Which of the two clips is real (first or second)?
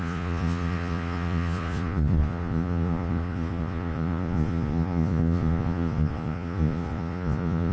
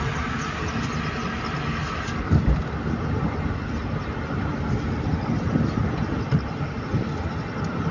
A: second